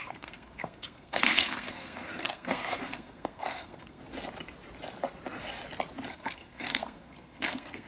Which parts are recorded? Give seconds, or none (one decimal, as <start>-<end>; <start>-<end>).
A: 4.0-6.1